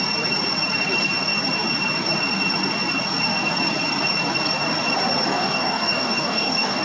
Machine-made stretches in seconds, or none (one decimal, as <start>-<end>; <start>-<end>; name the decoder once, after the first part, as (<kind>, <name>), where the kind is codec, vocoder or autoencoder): 5.3-6.8 (codec, DAC)